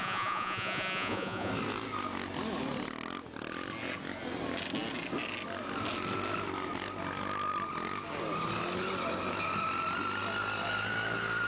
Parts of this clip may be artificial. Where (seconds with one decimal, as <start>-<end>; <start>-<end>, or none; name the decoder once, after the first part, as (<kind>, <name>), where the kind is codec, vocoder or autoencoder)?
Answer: 0.0-1.5 (vocoder, Vocos)